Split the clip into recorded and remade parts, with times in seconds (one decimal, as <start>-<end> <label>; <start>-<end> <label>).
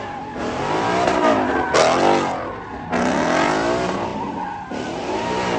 0.0-5.6 recorded